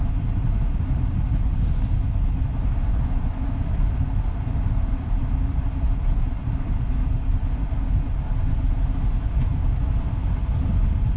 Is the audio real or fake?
real